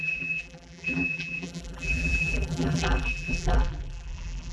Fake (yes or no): yes